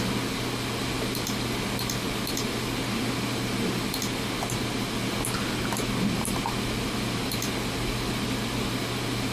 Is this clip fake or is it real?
real